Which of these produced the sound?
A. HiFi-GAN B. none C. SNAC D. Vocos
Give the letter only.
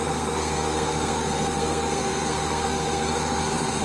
C